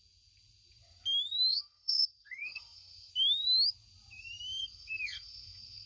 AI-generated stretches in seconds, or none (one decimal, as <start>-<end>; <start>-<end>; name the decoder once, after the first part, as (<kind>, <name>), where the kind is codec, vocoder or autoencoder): 1.5-3.1 (codec, SNAC); 4.6-5.9